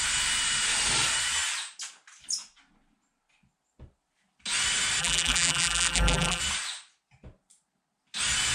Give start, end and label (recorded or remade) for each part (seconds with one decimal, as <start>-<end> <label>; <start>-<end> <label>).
0.0-5.0 recorded; 5.0-6.4 remade; 6.4-8.5 recorded